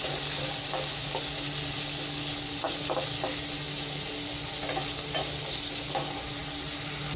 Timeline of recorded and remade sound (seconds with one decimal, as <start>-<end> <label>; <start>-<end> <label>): 0.0-7.2 recorded